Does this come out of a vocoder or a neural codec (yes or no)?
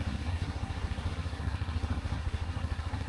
yes